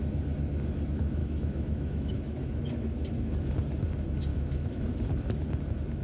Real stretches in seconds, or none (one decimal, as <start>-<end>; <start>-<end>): 0.0-1.2; 2.1-4.3; 5.0-6.0